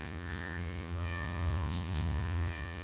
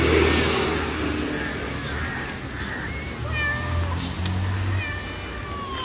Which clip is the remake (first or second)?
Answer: first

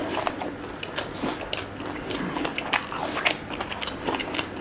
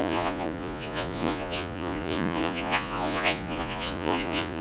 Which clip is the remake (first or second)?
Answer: second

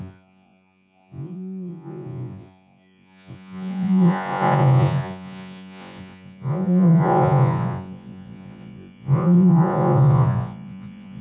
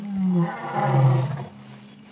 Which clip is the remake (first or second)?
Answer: first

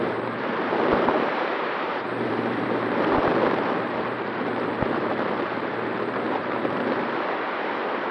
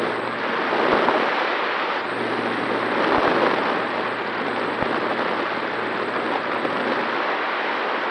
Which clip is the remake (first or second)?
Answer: first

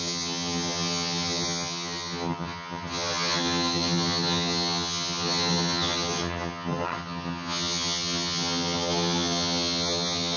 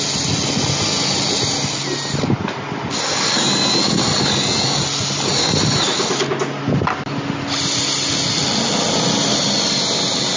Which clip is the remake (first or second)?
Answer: first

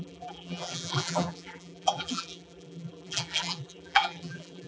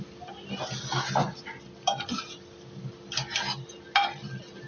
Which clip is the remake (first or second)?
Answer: first